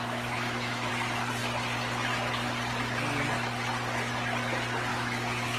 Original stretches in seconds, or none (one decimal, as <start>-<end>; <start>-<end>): 0.9-4.9

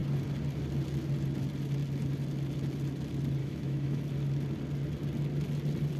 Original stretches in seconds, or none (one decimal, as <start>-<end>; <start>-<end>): 0.0-3.4; 4.0-6.0

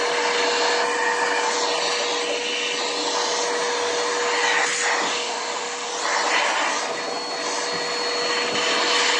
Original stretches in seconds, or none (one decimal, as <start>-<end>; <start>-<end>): 0.0-5.1; 5.9-9.2